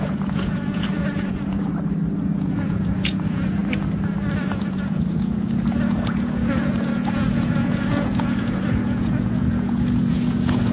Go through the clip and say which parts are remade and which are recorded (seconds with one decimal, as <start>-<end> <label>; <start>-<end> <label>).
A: 0.0-1.7 remade; 1.7-2.2 recorded; 2.2-3.6 remade; 3.6-4.4 recorded; 4.4-10.7 remade